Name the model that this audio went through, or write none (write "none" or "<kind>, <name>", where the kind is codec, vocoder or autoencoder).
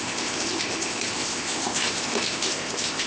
codec, ZipCodec